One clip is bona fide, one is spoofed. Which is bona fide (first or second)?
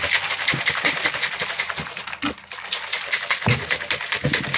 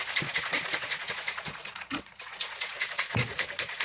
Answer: first